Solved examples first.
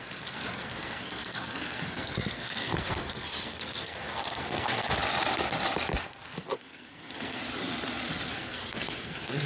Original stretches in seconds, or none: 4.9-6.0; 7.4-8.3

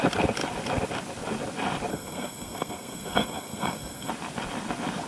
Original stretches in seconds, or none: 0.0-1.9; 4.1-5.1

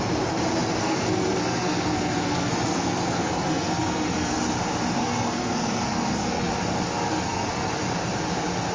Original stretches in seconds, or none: 0.0-0.8; 4.4-5.0; 6.5-7.1; 7.7-8.7

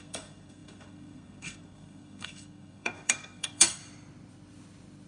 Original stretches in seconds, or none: 3.8-5.1

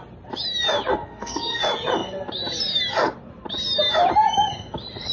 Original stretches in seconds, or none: 0.0-0.9; 1.6-5.1

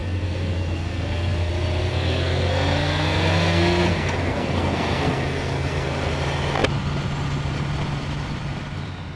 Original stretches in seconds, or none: 1.5-1.9; 6.1-9.2